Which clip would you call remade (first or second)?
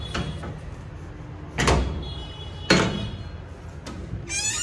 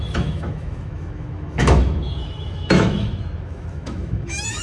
second